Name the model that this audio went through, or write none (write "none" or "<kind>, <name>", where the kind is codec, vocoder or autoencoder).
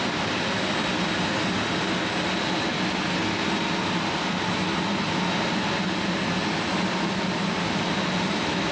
none